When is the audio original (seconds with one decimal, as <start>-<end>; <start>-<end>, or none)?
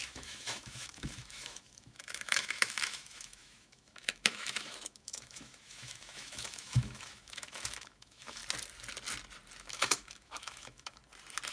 8.4-9.6; 11.0-11.5